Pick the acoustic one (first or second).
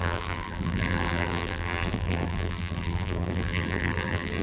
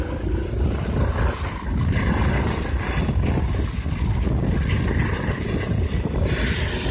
second